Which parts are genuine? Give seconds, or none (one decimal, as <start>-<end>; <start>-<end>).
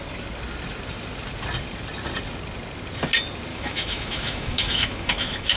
0.0-3.5